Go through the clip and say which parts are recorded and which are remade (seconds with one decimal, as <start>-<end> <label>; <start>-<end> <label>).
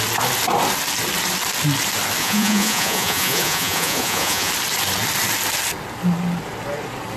0.0-2.2 recorded; 2.2-4.5 remade; 4.5-7.2 recorded